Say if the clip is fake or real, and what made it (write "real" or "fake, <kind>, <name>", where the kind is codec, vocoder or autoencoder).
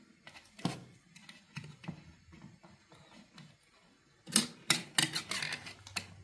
real